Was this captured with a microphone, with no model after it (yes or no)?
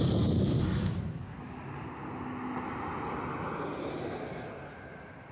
yes